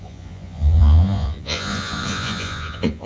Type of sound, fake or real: fake